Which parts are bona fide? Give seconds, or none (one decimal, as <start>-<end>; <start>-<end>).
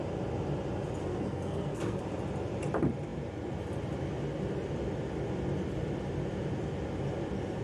0.0-1.0; 2.0-7.6